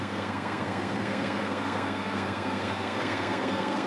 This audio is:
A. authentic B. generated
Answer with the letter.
B